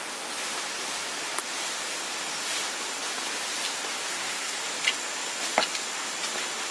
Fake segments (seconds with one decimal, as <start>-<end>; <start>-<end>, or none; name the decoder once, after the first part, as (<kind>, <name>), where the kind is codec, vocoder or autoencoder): 4.1-4.6 (codec, SNAC)